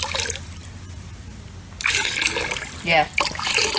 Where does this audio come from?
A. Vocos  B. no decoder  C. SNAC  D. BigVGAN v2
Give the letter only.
B